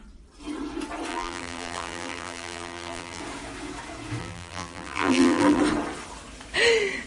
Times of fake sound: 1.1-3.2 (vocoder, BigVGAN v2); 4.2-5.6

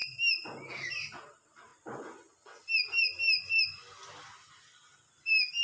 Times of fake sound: 0.0-1.7 (vocoder, BigVGAN v2); 5.1-5.6

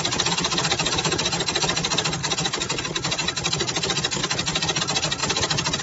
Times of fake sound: 2.2-2.8 (vocoder, BigVGAN v2); 4.2-4.8

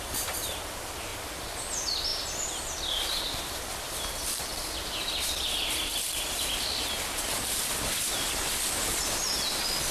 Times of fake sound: 1.1-1.6 (vocoder, BigVGAN v2)

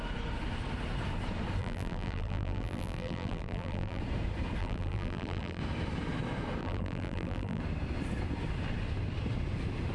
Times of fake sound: 1.6-4.0 (vocoder, BigVGAN v2); 4.6-5.6; 6.6-7.6

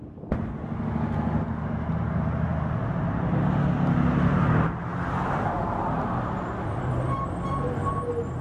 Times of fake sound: 4.9-6.9 (vocoder, BigVGAN v2)

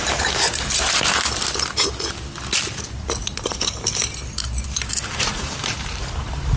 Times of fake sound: 0.0-0.9 (vocoder, BigVGAN v2); 3.2-6.0

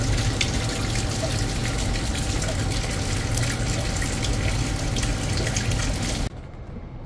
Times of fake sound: none